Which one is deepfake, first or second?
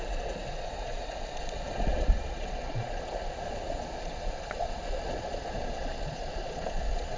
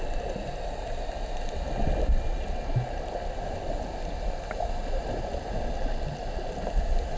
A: first